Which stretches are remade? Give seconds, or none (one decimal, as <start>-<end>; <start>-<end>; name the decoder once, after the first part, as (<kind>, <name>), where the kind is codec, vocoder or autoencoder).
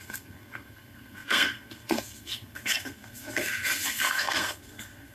0.0-5.1 (codec, SNAC)